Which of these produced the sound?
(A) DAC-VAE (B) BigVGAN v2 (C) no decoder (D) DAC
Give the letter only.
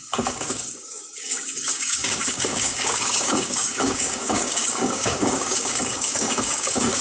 D